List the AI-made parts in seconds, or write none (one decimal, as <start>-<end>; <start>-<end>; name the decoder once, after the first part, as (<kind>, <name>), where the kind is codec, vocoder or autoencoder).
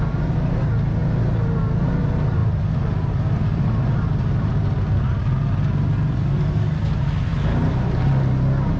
none